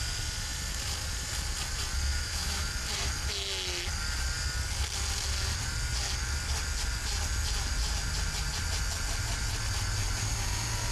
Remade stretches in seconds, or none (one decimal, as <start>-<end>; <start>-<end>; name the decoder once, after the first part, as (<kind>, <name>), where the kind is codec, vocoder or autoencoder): 2.1-2.6 (autoencoder, DAC-VAE)